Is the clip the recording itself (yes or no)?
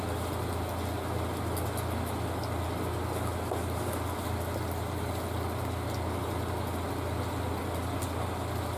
yes